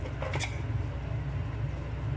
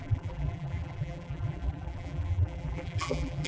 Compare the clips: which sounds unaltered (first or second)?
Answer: first